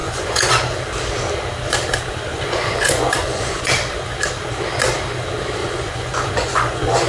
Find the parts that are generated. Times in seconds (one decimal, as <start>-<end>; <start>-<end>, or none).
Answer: 0.0-0.6; 2.3-3.7; 5.6-7.1